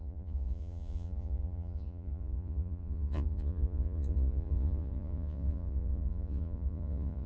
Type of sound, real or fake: fake